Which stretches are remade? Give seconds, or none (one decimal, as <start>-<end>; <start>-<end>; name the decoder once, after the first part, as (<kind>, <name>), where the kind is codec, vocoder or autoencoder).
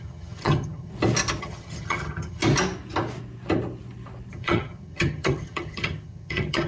0.0-0.9 (vocoder, HiFi-GAN); 1.4-2.4; 4.3-6.7